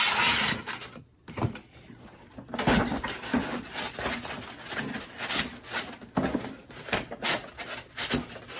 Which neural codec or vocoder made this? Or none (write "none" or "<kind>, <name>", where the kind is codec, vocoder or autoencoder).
none